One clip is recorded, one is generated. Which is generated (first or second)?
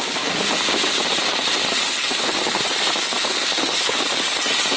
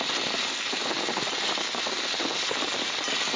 first